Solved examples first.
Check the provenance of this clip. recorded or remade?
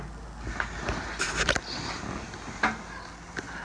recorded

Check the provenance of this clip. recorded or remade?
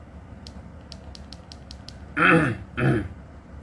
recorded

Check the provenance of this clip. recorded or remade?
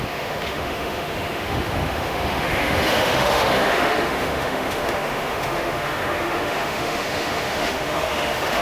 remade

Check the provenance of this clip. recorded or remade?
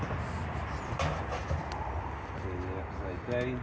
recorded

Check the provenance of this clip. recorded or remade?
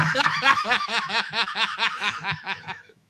remade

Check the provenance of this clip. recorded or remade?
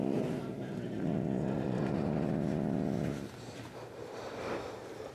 recorded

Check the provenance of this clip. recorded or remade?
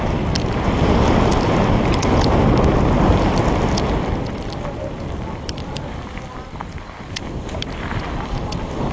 recorded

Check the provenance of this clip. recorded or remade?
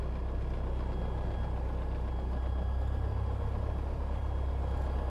recorded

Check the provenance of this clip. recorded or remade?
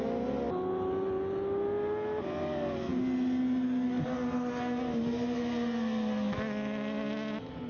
recorded